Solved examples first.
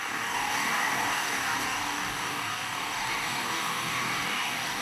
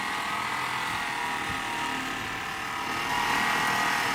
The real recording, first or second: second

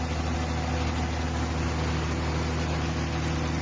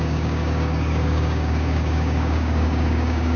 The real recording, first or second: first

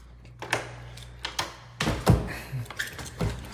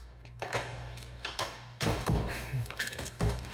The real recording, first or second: first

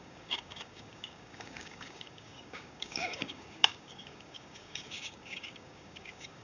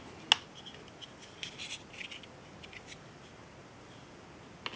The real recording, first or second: second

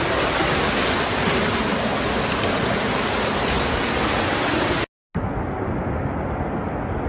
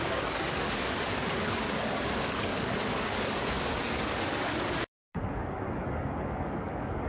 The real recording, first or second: first